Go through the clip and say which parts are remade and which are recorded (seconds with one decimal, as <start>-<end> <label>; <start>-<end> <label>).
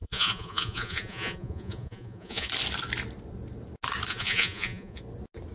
0.0-2.5 remade; 2.5-4.1 recorded; 4.1-5.0 remade; 5.0-5.5 recorded